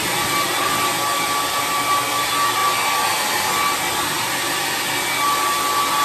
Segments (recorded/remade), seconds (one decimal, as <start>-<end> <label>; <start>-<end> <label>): 0.0-6.0 recorded